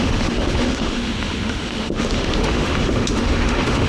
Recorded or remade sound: remade